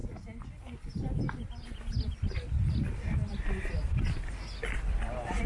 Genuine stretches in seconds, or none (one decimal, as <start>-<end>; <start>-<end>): 0.0-5.5